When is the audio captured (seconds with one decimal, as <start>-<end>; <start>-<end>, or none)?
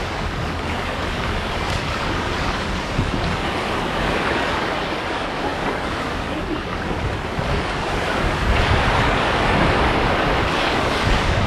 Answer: none